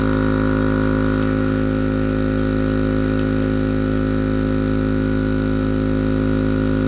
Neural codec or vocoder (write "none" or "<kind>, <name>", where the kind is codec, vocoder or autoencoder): none